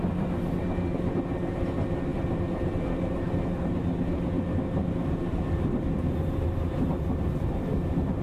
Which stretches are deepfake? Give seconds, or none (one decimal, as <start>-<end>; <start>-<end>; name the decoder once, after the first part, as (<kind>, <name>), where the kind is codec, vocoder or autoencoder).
2.1-3.3 (vocoder, BigVGAN v2)

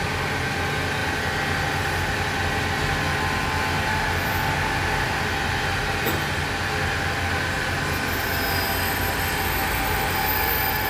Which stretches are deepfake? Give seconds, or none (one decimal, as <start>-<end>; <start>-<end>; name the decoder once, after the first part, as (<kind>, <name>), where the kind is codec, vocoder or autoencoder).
none

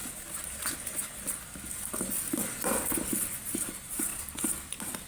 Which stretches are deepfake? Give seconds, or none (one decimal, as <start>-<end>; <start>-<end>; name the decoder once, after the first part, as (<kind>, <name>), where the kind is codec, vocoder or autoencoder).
3.1-4.1 (vocoder, BigVGAN v2)